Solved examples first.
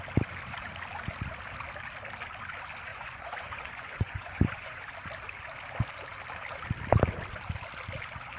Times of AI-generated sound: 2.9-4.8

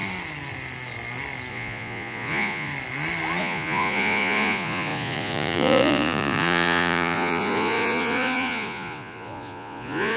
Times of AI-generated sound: 1.5-2.7; 3.4-10.2

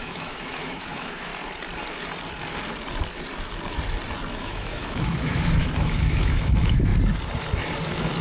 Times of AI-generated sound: 0.0-1.3; 4.3-6.9